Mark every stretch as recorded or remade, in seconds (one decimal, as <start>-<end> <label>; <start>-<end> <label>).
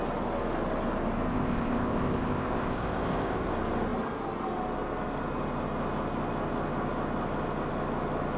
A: 0.0-1.3 recorded; 1.3-3.5 remade; 3.5-8.4 recorded